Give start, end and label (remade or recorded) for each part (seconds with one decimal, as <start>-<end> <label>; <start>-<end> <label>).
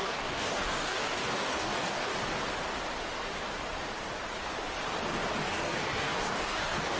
0.0-2.1 remade; 2.1-5.4 recorded; 5.4-7.0 remade